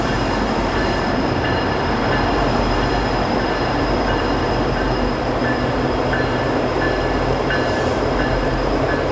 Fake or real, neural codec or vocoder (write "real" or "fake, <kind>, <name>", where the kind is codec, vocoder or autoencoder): fake, vocoder, BigVGAN v2